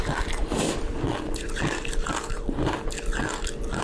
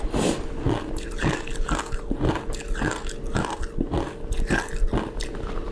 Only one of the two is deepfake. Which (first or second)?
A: first